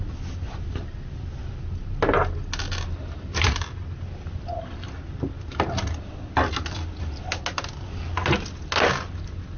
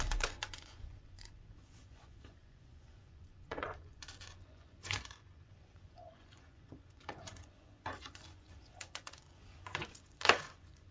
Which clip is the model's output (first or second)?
second